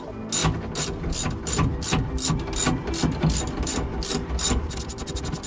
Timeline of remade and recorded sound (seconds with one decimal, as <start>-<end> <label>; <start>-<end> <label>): 0.0-5.5 recorded